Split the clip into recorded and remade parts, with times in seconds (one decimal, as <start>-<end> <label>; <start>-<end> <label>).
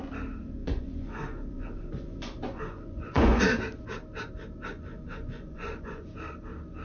0.0-0.6 recorded; 0.6-3.4 remade; 3.4-4.7 recorded; 4.7-6.1 remade; 6.1-6.8 recorded